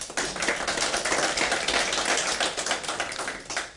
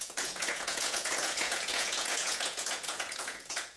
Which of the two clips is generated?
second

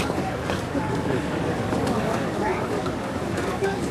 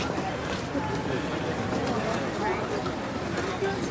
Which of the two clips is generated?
first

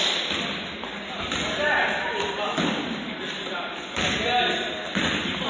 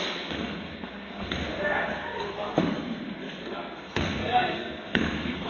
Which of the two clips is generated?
second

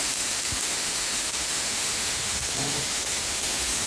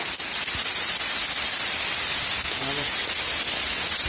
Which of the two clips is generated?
first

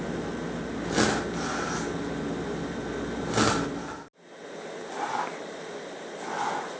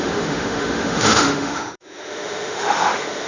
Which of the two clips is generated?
second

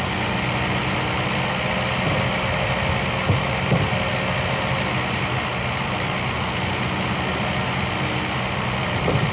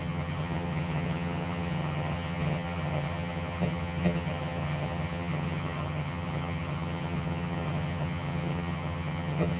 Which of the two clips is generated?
second